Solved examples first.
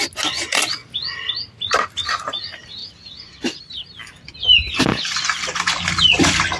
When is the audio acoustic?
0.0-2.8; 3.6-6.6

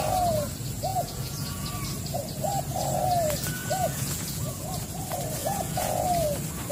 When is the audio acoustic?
0.0-0.9; 1.7-3.6; 4.6-5.4; 6.0-6.7

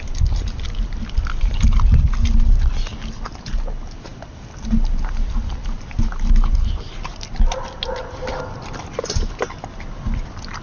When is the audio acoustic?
0.0-10.6

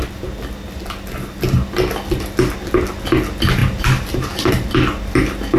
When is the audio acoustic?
0.0-3.6; 4.5-5.6

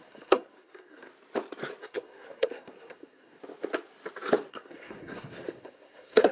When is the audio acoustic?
1.1-1.8; 3.4-4.5